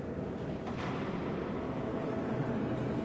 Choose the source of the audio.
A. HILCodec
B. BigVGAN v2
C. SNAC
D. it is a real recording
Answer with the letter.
D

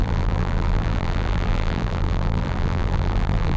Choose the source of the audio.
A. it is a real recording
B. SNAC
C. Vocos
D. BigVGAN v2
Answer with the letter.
D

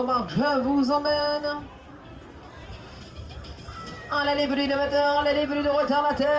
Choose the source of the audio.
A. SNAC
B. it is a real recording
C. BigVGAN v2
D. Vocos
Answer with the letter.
C